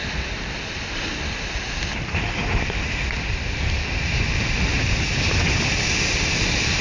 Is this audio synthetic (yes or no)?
no